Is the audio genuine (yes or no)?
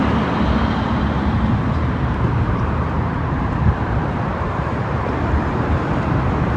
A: no